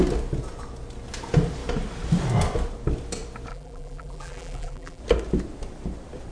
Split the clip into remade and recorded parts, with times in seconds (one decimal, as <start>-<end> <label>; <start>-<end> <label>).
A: 0.0-3.5 recorded; 3.5-5.0 remade; 5.0-6.3 recorded